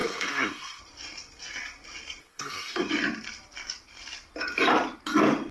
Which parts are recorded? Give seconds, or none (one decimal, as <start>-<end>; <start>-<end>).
0.8-2.2; 2.9-5.5

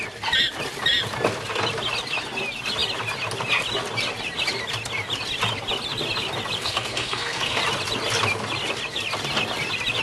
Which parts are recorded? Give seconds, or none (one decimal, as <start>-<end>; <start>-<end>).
0.0-6.6; 7.6-10.0

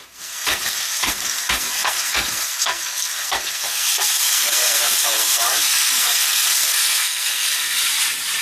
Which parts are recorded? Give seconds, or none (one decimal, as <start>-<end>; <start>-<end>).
7.8-8.4